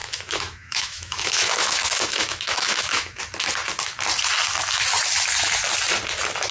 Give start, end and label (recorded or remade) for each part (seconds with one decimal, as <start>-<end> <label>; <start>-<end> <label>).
0.0-3.2 remade; 3.2-6.5 recorded